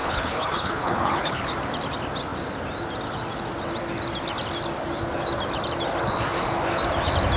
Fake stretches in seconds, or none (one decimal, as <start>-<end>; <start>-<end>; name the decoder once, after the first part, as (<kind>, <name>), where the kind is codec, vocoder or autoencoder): 0.0-1.5 (codec, HILCodec)